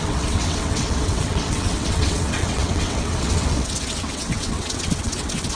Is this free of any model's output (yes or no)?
no